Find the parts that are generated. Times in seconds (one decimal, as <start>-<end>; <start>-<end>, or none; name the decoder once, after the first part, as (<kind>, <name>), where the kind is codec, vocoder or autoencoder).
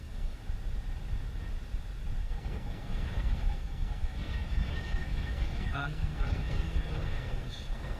0.0-0.4 (codec, SNAC); 2.2-8.0